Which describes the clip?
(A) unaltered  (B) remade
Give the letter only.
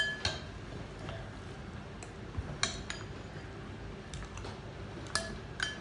A